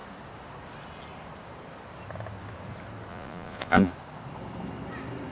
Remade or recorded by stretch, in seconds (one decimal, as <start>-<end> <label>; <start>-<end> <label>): 0.0-3.1 recorded; 3.1-3.9 remade; 3.9-5.3 recorded